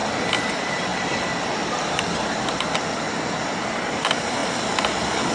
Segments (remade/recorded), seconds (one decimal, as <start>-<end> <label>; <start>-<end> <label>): 0.0-0.5 recorded; 0.5-0.9 remade; 0.9-3.7 recorded; 3.7-4.4 remade; 4.4-5.3 recorded